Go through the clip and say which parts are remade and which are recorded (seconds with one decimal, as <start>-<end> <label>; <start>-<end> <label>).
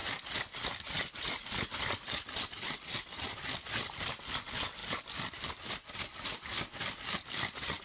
0.0-4.3 remade; 4.3-7.8 recorded